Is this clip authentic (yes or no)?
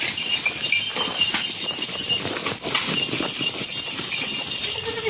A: yes